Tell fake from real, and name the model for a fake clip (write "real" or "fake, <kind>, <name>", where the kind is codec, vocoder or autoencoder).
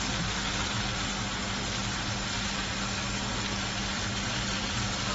real